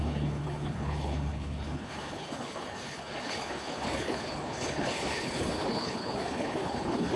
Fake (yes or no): yes